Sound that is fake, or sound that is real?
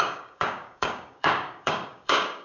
fake